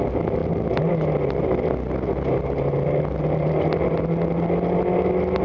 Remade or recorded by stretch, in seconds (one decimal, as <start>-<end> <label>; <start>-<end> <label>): 0.0-5.4 recorded